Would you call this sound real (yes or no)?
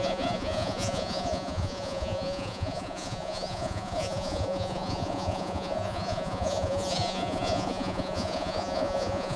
no